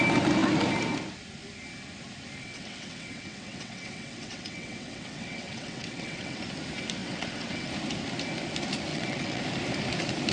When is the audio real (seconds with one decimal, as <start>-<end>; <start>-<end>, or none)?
0.0-2.4; 6.4-7.0; 7.7-8.9; 9.4-10.3